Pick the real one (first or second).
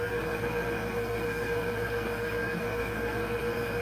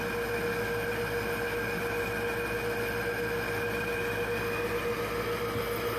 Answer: second